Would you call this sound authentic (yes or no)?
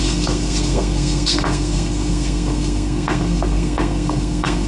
no